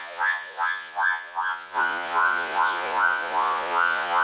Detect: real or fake fake